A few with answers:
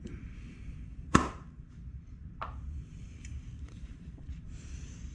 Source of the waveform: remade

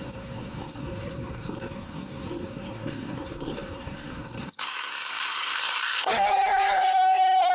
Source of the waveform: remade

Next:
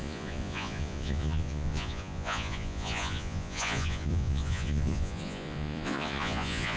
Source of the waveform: remade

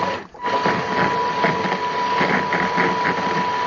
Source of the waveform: recorded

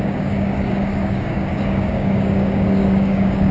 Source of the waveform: remade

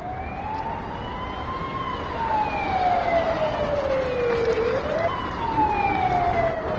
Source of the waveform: recorded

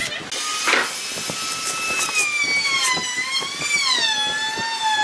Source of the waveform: recorded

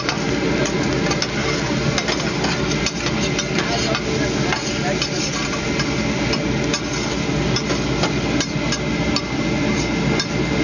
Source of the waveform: recorded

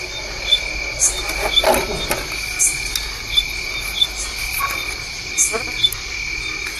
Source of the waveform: recorded